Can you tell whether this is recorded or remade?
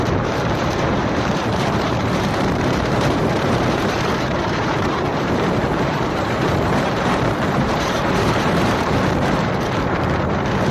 remade